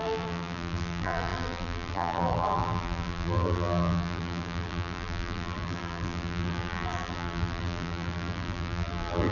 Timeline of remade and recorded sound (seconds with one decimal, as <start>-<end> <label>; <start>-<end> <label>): 0.0-9.3 remade